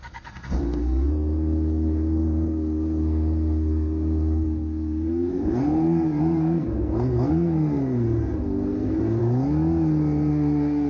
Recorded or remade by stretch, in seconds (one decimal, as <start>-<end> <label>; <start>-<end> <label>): 0.0-9.2 remade; 9.2-10.3 recorded; 10.3-10.9 remade